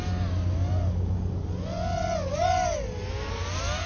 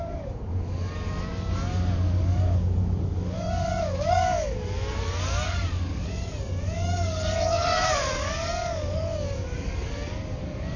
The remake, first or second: second